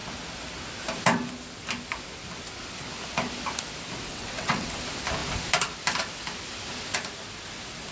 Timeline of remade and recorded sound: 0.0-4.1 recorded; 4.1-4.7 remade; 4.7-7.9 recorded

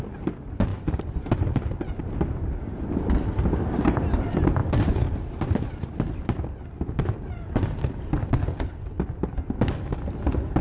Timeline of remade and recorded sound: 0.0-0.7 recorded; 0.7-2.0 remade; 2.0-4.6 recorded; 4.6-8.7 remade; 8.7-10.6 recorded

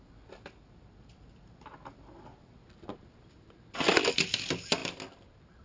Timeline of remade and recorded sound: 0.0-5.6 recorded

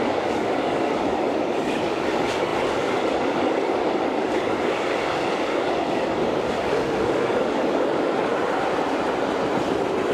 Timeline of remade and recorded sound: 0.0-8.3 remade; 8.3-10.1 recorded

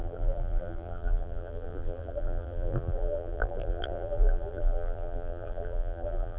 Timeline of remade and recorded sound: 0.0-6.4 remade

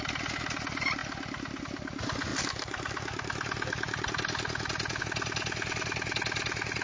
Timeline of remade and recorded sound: 0.0-2.3 recorded; 2.3-5.0 remade; 5.0-6.8 recorded

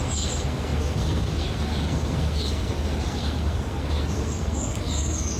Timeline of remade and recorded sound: 0.0-5.4 remade